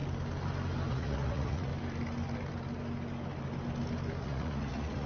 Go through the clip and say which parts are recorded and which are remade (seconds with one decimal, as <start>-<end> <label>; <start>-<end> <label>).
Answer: 0.0-0.9 recorded; 0.9-1.7 remade; 1.7-4.2 recorded; 4.2-5.1 remade